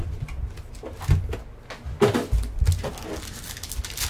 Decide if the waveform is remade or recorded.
recorded